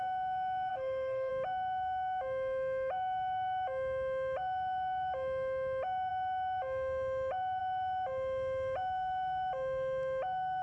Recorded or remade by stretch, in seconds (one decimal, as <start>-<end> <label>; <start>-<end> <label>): 0.0-0.7 recorded; 0.7-1.3 remade; 1.3-10.6 recorded